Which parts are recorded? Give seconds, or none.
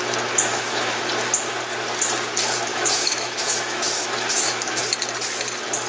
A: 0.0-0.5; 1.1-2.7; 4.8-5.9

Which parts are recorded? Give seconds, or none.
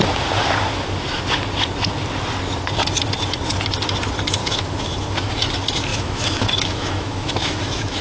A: 0.0-4.4; 5.3-5.9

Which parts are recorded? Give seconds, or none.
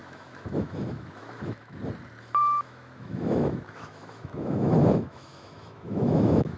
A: 1.8-2.4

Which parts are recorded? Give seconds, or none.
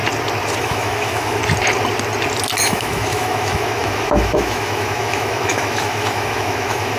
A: 0.0-0.6; 1.4-2.6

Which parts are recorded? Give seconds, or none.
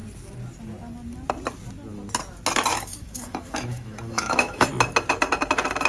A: 0.0-2.7; 4.7-5.9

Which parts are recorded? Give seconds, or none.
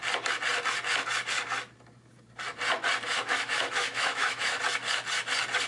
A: 0.0-3.1; 4.6-5.7